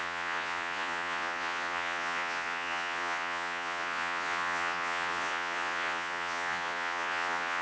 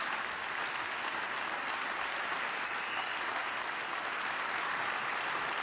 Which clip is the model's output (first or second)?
first